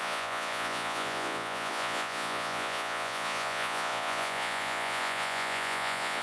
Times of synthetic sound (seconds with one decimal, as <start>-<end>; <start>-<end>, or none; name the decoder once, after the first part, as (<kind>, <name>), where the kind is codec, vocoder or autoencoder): 0.0-6.2 (vocoder, Vocos)